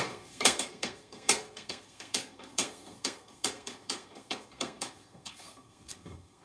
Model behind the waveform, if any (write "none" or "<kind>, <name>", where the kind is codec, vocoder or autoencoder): codec, SNAC